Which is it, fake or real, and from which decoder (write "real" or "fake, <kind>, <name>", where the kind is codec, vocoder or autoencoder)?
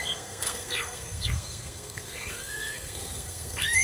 fake, codec, SNAC